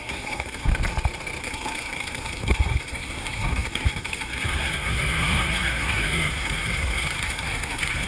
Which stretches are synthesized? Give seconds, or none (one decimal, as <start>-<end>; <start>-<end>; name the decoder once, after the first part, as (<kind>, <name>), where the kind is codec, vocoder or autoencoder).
0.0-0.7 (codec, SNAC); 1.4-8.1